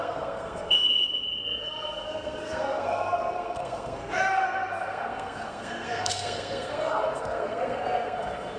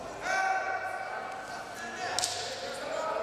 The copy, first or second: first